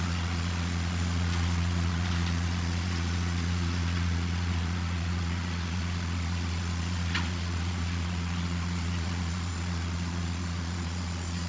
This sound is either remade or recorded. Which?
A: remade